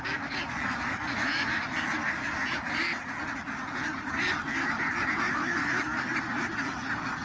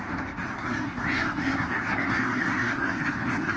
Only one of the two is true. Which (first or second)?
first